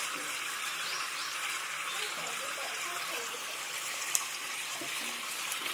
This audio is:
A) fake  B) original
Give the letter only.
A